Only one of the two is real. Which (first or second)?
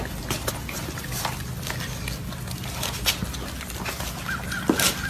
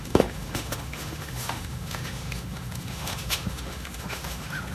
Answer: first